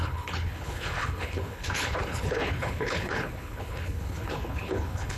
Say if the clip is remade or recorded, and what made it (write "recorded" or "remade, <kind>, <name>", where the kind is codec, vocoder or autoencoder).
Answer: remade, codec, HILCodec